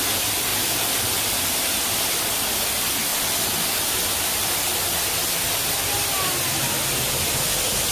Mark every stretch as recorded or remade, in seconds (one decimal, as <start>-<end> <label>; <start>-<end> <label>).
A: 0.0-0.5 recorded; 0.5-1.1 remade; 1.1-3.1 recorded; 3.1-4.6 remade; 4.6-7.9 recorded